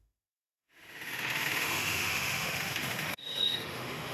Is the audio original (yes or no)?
no